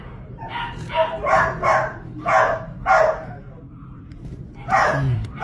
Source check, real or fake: fake